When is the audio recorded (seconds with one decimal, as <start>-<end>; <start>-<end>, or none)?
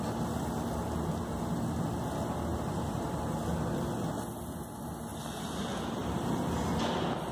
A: 0.0-2.5; 3.5-5.1; 5.6-6.0; 6.8-7.3